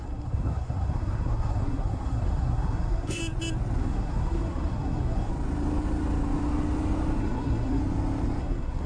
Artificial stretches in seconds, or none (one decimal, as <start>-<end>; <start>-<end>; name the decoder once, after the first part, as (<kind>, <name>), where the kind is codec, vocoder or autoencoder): 0.0-3.2 (codec, SNAC); 3.8-5.3; 7.2-7.8; 8.4-8.9